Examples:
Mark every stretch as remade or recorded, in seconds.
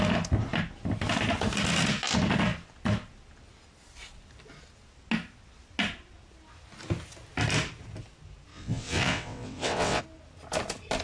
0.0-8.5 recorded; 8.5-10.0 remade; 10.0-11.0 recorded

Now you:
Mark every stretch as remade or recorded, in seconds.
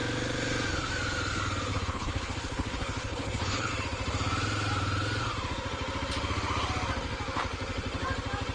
0.0-1.7 recorded; 1.7-3.7 remade; 3.7-8.5 recorded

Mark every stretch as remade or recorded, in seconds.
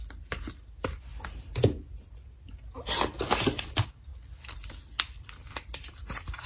0.0-6.5 recorded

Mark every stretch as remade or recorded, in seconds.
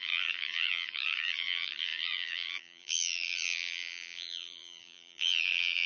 0.0-5.9 remade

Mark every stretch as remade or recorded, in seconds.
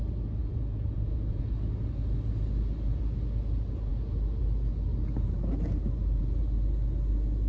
0.0-0.4 recorded; 0.4-1.4 remade; 1.4-7.5 recorded